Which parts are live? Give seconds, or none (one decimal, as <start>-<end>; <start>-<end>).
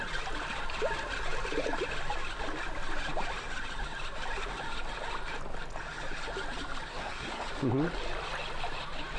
0.0-6.9; 7.4-9.2